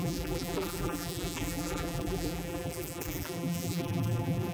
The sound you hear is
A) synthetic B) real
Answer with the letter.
A